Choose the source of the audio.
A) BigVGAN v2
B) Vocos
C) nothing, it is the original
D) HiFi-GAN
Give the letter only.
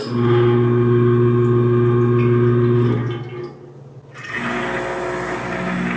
C